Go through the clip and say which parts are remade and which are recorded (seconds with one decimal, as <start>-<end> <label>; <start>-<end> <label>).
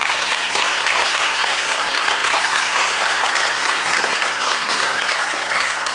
0.0-5.9 remade